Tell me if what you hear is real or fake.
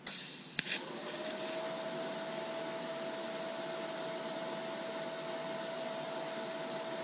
real